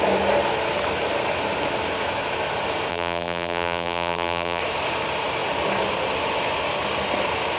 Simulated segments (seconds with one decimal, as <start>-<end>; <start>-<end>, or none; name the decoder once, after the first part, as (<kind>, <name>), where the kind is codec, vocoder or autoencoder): 2.9-4.6 (vocoder, BigVGAN v2)